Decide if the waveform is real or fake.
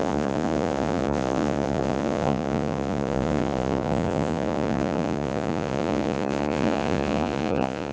fake